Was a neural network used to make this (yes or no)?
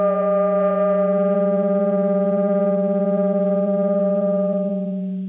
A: yes